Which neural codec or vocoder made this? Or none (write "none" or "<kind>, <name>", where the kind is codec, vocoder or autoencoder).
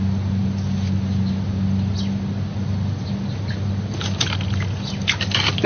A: none